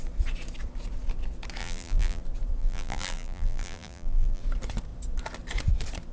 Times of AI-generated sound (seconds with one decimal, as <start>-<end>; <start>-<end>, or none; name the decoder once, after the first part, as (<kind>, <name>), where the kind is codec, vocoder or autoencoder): 1.6-2.2 (vocoder, BigVGAN v2); 2.6-4.4